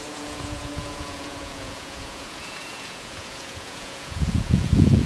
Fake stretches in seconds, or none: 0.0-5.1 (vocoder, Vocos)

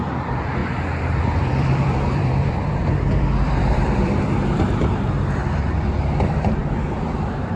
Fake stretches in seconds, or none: 0.0-7.6 (vocoder, BigVGAN v2)